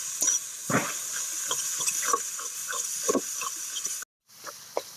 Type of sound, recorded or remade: recorded